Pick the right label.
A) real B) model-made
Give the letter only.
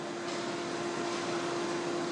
A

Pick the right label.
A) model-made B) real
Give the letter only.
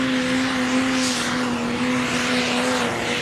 B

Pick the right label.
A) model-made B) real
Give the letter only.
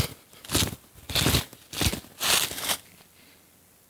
B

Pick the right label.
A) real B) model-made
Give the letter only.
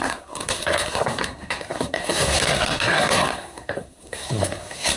B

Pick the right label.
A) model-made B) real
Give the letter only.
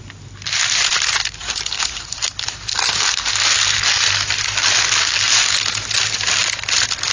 B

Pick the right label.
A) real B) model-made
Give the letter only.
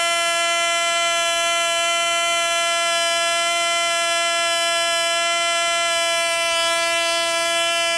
A